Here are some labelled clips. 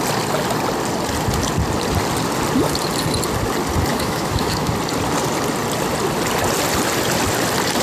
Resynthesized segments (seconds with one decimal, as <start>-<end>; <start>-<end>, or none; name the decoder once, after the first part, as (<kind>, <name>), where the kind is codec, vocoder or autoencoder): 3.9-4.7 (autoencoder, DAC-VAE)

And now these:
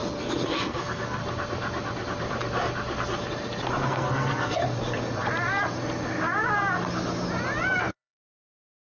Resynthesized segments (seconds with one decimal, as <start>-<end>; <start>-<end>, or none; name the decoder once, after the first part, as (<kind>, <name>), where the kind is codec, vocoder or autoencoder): 0.5-1.2 (codec, SNAC); 3.8-4.6; 7.8-8.9

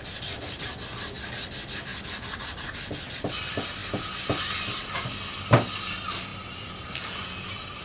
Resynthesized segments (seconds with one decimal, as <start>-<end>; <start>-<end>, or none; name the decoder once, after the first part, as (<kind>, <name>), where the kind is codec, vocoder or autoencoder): none